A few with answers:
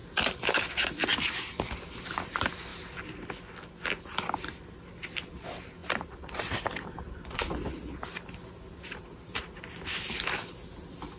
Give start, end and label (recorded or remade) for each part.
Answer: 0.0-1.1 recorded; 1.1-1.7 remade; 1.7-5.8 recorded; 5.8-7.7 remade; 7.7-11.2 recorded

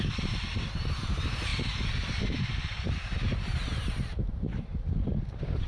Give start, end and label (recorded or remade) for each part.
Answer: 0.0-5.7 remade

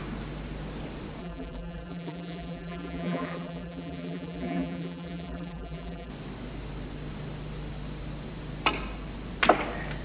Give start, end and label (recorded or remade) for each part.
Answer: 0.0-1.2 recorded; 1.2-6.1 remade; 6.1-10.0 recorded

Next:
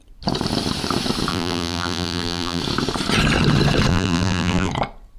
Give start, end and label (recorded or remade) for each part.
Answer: 0.0-1.3 recorded; 1.3-2.6 remade; 2.6-3.9 recorded; 3.9-4.7 remade; 4.7-5.2 recorded